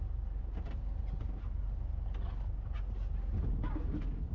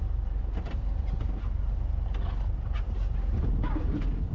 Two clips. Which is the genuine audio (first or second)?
first